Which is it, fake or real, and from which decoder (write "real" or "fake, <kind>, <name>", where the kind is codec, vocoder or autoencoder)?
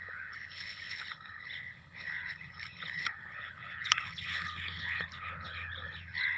fake, codec, HILCodec